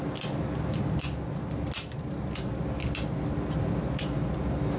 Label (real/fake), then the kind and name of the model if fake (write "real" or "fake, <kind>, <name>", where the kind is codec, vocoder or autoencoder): real